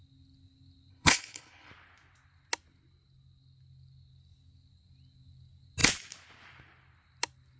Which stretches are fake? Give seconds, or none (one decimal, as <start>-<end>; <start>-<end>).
0.9-1.7

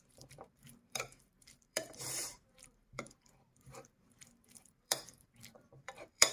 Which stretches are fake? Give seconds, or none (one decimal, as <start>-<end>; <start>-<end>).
0.0-6.3

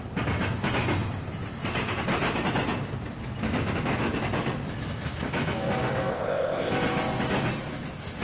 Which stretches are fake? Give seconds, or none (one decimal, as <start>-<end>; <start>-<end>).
6.1-6.7

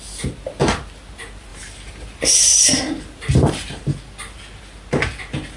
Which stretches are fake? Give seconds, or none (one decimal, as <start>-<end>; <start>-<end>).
1.5-3.9

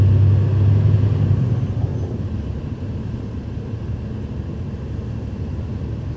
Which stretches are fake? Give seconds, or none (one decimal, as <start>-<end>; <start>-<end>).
none

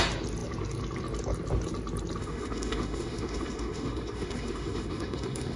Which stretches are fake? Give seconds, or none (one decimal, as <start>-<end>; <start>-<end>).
2.2-5.6

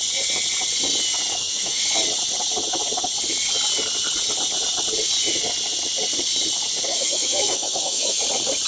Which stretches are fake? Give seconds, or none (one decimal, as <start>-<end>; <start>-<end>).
1.3-1.8; 6.9-8.2